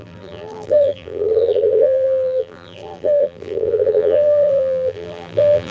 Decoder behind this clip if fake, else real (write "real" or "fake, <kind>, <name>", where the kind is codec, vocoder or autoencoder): fake, vocoder, BigVGAN v2